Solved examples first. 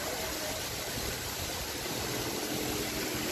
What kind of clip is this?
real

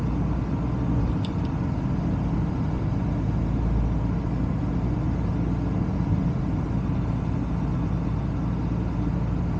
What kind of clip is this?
real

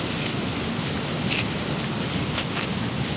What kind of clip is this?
real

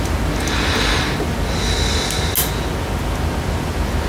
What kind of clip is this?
real